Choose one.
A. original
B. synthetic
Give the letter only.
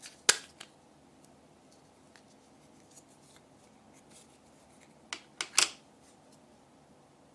A